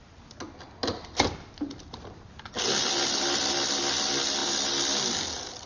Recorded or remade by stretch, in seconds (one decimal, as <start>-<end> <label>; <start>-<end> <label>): 0.0-5.7 recorded